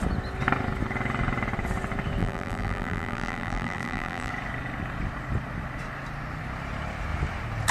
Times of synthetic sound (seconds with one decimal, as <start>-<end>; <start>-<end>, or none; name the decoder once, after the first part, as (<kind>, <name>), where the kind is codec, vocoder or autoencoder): 2.2-4.3 (vocoder, BigVGAN v2)